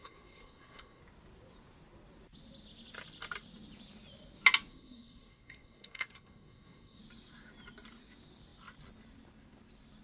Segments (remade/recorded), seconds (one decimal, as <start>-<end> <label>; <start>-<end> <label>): 0.0-1.0 remade; 1.0-4.7 recorded; 4.7-7.0 remade; 7.0-10.0 recorded